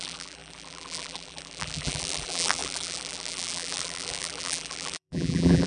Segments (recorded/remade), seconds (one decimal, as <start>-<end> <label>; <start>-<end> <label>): 0.0-5.7 remade